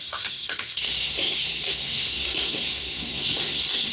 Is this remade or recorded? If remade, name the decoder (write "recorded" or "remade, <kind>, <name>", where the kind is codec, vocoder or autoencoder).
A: remade, codec, SNAC